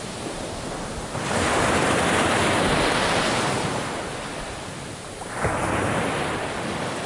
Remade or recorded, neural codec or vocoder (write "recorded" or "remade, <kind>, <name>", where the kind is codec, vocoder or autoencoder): recorded